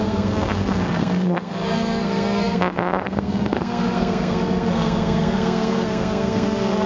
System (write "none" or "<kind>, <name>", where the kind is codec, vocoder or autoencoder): codec, SNAC